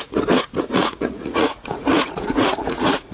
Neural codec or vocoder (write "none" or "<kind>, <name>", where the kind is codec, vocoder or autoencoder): vocoder, Vocos